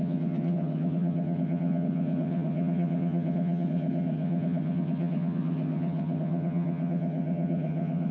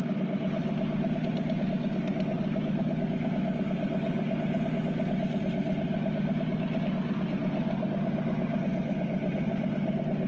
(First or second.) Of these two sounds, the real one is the second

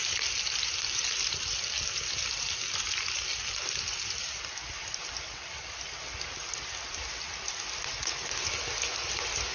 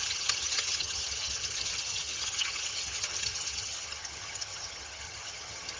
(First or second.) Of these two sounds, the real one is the first